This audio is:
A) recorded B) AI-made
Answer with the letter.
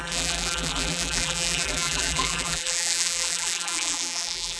B